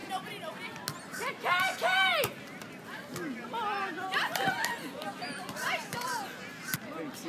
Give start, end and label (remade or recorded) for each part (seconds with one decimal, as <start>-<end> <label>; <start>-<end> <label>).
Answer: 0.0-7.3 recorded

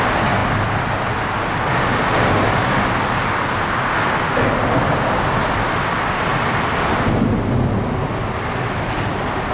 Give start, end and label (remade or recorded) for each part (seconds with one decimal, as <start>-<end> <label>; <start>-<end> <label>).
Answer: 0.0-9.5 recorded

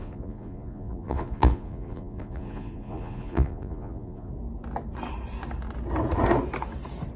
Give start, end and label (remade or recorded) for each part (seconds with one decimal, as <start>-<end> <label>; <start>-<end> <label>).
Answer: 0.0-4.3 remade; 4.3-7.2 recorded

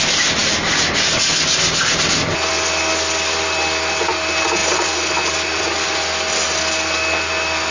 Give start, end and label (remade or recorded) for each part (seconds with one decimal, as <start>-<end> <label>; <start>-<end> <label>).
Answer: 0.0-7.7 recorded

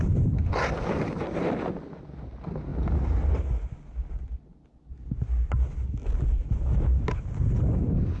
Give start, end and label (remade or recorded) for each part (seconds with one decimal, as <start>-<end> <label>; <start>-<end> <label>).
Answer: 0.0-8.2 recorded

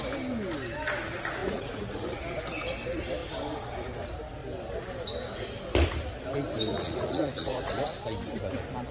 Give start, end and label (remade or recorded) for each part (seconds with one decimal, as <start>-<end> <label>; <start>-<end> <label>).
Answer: 0.0-1.4 recorded; 1.4-2.2 remade; 2.2-6.7 recorded; 6.7-7.7 remade; 7.7-8.9 recorded

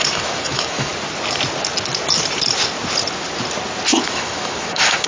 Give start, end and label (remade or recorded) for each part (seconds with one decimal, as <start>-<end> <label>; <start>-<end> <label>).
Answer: 0.0-0.9 remade; 0.9-4.0 recorded; 4.0-5.1 remade

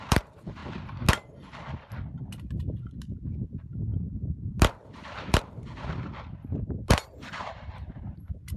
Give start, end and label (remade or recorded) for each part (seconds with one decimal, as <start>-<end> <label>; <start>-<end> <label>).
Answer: 0.0-0.6 remade; 0.6-3.0 recorded; 3.0-8.6 remade